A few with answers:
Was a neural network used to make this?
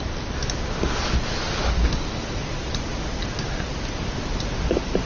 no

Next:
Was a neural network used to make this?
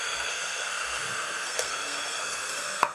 yes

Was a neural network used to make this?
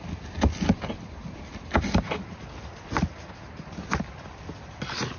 no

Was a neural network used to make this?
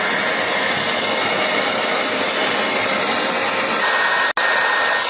no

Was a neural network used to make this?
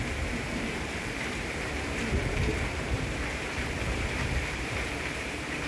yes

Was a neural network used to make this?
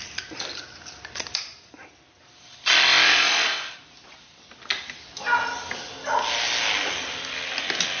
no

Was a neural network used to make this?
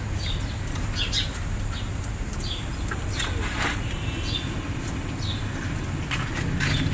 no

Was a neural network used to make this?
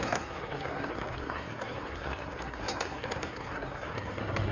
yes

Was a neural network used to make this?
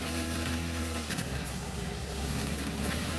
yes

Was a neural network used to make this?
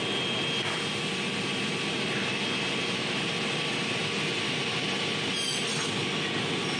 no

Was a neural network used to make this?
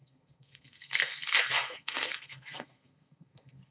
yes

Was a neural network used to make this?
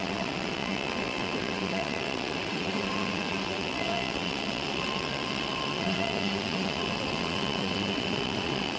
yes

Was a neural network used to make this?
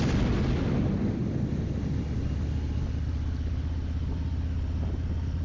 no